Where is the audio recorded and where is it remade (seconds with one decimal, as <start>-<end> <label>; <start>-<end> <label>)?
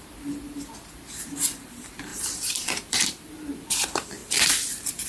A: 0.0-2.1 recorded; 2.1-3.3 remade; 3.3-5.1 recorded